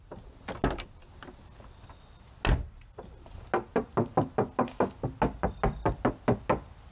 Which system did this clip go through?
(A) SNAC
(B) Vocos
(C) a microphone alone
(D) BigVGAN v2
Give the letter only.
C